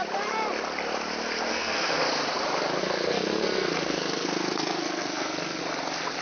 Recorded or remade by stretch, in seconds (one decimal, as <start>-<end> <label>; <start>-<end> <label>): 0.0-1.5 recorded; 1.5-2.0 remade; 2.0-2.8 recorded; 2.8-5.6 remade; 5.6-6.2 recorded